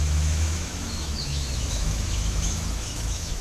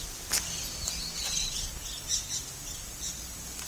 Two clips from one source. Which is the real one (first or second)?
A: second